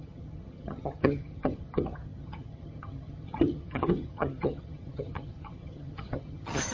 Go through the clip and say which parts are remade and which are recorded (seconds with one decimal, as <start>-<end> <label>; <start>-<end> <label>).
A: 0.0-6.7 remade